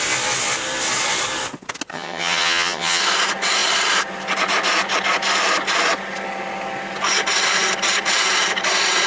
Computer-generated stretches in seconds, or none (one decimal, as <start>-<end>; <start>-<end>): 1.9-3.0